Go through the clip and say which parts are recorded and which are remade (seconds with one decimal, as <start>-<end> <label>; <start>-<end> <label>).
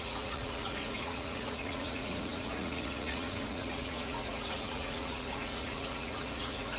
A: 0.0-6.8 remade